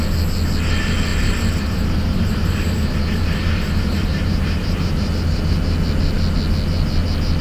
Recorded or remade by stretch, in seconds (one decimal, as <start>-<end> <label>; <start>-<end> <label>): 0.0-1.1 recorded; 1.1-5.1 remade; 5.1-7.4 recorded